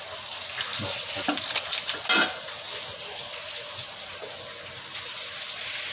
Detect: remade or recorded recorded